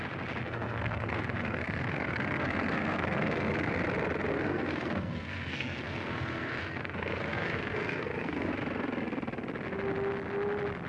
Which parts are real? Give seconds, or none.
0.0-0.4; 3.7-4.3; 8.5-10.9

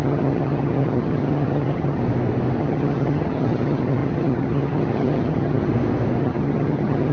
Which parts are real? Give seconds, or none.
2.0-2.6; 5.7-6.2